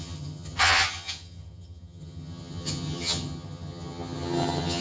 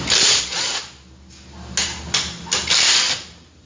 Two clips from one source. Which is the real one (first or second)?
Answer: second